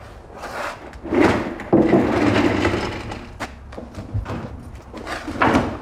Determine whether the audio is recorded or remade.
recorded